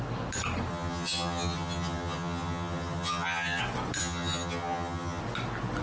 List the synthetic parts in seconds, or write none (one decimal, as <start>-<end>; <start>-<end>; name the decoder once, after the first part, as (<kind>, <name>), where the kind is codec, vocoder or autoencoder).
0.7-3.6 (vocoder, HiFi-GAN); 4.0-5.2